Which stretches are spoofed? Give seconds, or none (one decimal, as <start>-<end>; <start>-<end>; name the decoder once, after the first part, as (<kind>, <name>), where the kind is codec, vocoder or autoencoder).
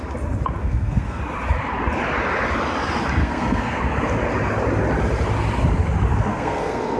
0.6-1.2 (codec, SNAC); 3.2-3.8; 6.3-7.0